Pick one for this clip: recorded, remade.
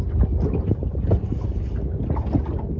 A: recorded